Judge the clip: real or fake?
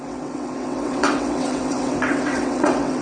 fake